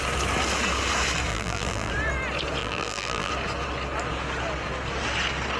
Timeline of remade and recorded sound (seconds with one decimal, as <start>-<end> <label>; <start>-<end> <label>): 0.0-1.3 recorded; 1.3-1.9 remade; 1.9-2.6 recorded; 2.6-3.3 remade; 3.3-5.6 recorded